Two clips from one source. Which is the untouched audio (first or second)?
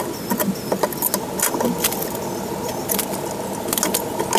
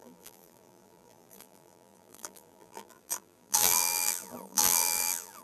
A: first